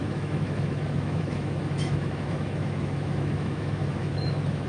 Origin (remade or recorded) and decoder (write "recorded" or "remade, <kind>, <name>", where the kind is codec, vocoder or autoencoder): remade, autoencoder, DAC-VAE